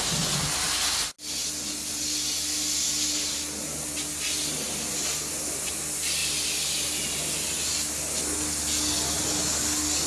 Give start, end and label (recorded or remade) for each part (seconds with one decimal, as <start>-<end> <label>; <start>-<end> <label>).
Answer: 0.0-10.1 recorded